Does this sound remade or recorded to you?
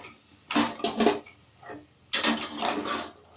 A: recorded